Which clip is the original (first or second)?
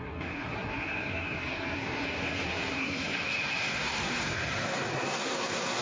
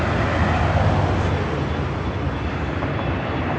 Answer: second